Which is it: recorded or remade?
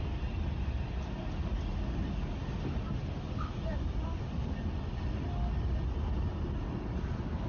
recorded